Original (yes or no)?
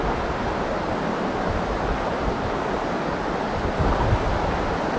yes